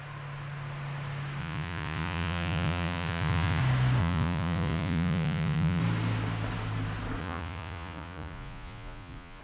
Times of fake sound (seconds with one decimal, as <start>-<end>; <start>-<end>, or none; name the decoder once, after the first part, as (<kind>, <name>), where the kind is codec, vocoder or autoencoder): 1.4-3.6 (vocoder, Vocos); 4.0-5.8; 7.2-9.4